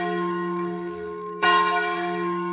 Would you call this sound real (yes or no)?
no